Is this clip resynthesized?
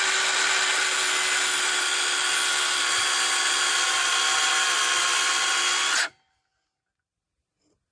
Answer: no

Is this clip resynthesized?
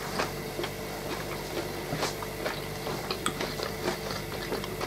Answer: yes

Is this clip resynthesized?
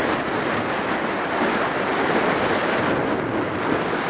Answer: no